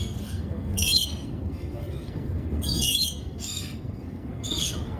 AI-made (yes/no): yes